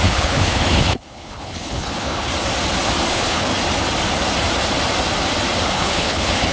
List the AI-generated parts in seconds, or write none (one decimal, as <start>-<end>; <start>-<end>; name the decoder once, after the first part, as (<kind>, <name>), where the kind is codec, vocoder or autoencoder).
0.0-2.3 (codec, HILCodec); 3.1-3.5; 5.7-6.5